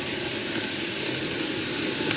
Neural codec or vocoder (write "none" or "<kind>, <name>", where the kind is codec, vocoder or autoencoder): none